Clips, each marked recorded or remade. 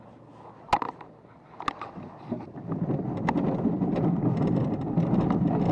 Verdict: recorded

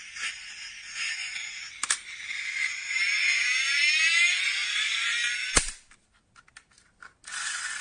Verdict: recorded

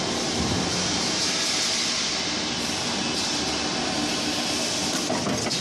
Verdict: recorded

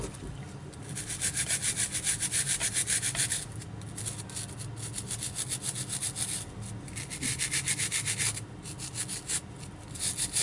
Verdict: recorded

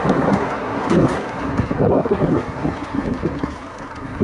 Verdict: remade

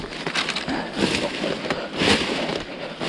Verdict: recorded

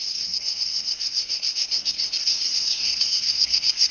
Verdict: remade